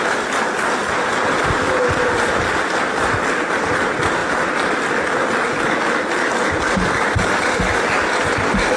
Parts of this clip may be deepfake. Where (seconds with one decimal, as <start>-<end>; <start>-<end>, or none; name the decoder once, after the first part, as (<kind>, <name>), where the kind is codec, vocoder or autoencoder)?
none